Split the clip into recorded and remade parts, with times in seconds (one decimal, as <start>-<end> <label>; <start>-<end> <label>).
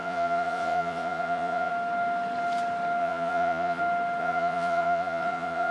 0.0-1.7 remade; 1.7-3.0 recorded; 3.0-3.8 remade; 3.8-4.2 recorded; 4.2-5.7 remade